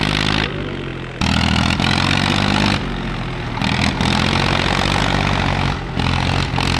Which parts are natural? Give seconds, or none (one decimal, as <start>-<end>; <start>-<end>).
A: 0.0-6.8